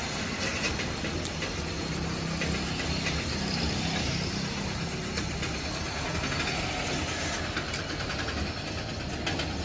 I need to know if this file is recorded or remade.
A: recorded